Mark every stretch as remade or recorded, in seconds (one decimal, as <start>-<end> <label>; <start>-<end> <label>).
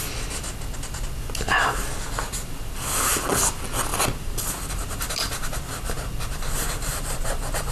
0.0-7.7 recorded